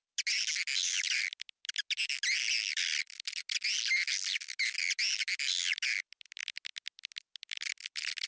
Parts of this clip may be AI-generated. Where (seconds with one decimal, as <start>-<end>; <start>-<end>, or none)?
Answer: none

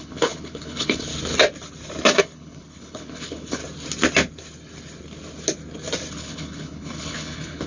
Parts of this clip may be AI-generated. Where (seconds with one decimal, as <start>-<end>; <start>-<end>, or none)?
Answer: 0.0-1.1; 2.2-3.6; 6.1-7.7

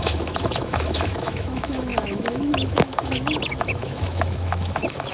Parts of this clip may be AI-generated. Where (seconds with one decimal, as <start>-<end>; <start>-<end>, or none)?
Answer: 0.0-5.1